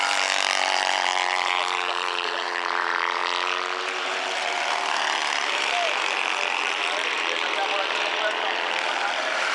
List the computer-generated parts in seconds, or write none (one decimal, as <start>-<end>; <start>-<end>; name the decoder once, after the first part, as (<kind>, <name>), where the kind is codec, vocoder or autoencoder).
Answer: 0.0-3.2 (vocoder, BigVGAN v2); 3.8-9.5